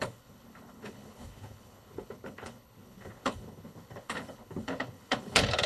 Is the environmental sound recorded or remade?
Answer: remade